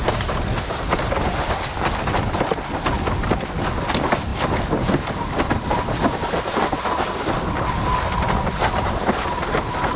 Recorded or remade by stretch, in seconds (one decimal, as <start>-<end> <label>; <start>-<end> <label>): 0.0-10.0 recorded